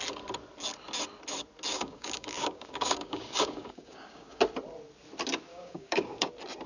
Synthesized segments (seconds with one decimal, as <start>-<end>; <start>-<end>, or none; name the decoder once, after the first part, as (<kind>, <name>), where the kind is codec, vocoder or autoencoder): 1.7-4.4 (codec, DAC); 5.5-6.3

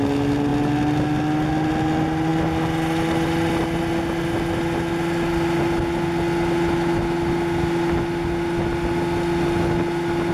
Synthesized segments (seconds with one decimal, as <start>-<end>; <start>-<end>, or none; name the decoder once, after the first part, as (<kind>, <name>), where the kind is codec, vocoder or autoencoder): none

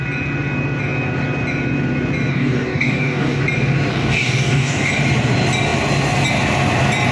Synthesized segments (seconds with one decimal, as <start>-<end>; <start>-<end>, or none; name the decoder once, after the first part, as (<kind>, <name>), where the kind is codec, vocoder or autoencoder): 2.3-3.4 (codec, DAC); 3.9-4.9

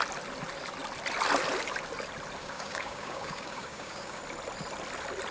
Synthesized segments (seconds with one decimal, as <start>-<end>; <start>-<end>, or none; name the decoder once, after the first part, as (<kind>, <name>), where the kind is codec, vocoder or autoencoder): 2.4-4.2 (codec, DAC)

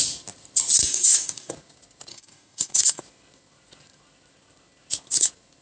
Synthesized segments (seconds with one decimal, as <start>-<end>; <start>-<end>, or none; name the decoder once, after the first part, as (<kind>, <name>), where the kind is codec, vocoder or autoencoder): 0.8-1.5 (codec, DAC); 2.1-3.0

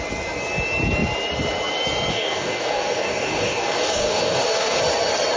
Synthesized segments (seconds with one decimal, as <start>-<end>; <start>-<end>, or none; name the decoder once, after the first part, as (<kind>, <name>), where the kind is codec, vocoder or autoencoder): 2.1-4.8 (codec, DAC)

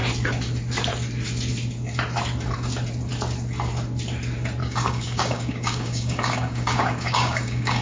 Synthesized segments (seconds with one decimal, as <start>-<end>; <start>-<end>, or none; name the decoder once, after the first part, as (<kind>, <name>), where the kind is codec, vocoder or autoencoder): 4.6-7.8 (codec, DAC)